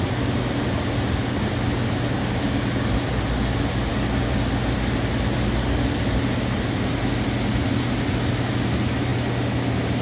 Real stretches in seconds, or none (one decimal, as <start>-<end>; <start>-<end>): 0.0-10.0